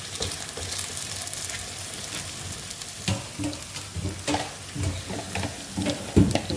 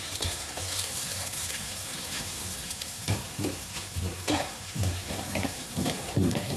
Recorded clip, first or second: first